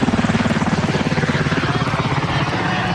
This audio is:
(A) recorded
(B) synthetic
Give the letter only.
A